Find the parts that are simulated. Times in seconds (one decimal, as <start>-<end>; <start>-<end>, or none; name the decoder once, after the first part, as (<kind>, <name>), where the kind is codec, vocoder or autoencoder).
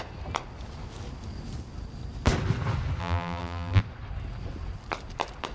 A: 3.0-3.8 (vocoder, BigVGAN v2)